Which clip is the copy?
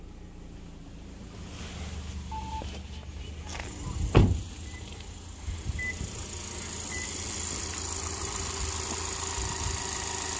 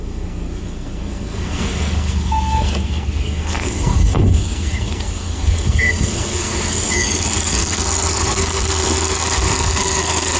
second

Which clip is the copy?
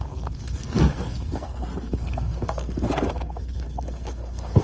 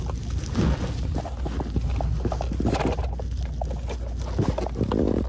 first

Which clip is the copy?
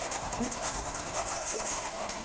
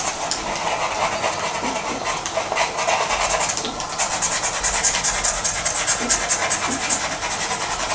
first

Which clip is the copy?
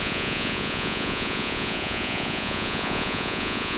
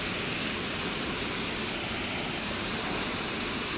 first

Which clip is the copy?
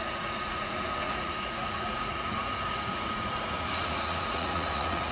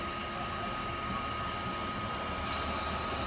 first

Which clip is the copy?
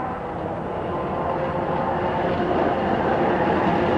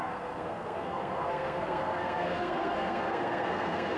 second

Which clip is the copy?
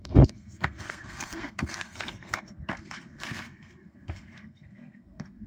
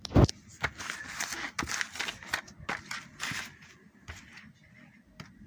first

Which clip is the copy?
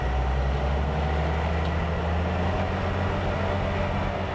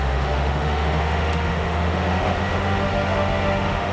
second